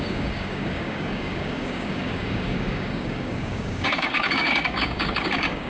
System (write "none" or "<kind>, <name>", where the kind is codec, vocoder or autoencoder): codec, DAC